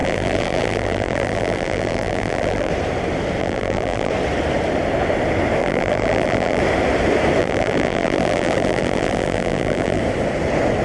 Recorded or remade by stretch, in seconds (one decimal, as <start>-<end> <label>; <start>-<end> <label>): 0.0-2.7 remade; 2.7-3.4 recorded; 3.4-4.1 remade; 4.1-5.6 recorded; 5.6-6.6 remade; 6.6-7.4 recorded; 7.4-10.0 remade; 10.0-10.8 recorded